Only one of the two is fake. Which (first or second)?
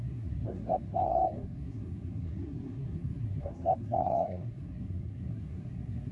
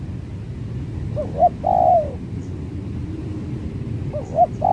first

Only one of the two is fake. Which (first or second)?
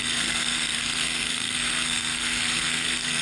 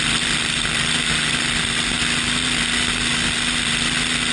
first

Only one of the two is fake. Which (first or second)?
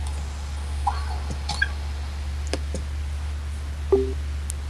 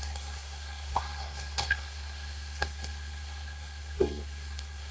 second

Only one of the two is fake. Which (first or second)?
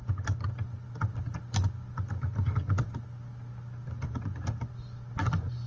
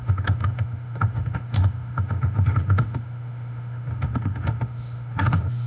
second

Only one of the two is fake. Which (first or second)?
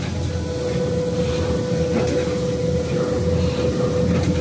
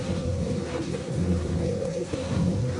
second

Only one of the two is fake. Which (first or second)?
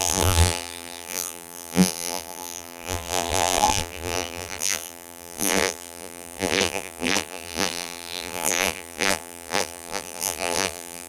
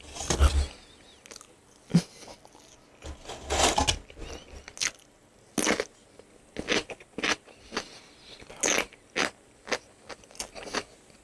first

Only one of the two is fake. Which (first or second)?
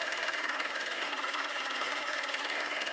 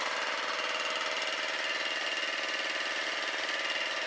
first